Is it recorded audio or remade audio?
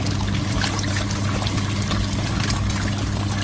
recorded